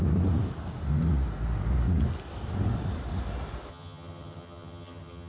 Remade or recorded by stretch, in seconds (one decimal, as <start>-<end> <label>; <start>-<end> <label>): 0.0-3.7 recorded; 3.7-5.3 remade